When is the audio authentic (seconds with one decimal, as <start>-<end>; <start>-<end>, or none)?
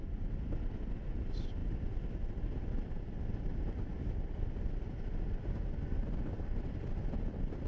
0.0-7.7